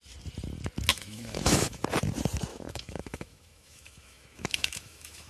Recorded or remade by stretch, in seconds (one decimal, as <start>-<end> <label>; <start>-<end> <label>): 0.0-0.9 recorded; 0.9-1.8 remade; 1.8-2.5 recorded; 2.5-5.3 remade